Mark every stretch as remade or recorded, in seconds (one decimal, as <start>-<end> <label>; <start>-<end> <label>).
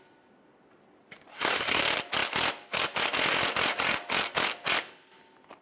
0.0-1.3 recorded; 1.3-1.8 remade; 1.8-5.6 recorded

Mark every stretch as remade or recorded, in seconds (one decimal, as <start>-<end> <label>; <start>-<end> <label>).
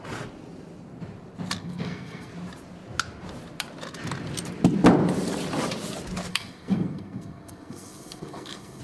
0.0-1.6 recorded; 1.6-2.3 remade; 2.3-6.3 recorded; 6.3-8.8 remade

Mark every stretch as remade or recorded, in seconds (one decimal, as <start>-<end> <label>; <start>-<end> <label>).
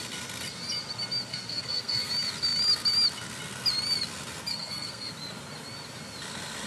0.0-1.3 recorded; 1.3-2.1 remade; 2.1-4.5 recorded; 4.5-5.1 remade; 5.1-6.7 recorded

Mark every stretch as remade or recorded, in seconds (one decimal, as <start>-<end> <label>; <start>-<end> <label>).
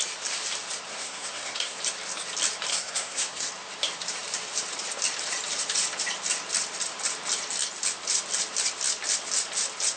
0.0-0.9 recorded; 0.9-1.8 remade; 1.8-2.7 recorded; 2.7-3.5 remade; 3.5-10.0 recorded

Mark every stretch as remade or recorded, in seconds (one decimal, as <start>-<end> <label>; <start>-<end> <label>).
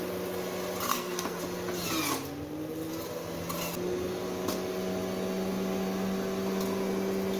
0.0-0.9 recorded; 0.9-1.4 remade; 1.4-7.4 recorded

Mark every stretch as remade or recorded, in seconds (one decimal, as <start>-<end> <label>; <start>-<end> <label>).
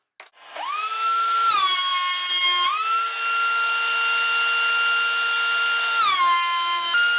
0.0-7.2 recorded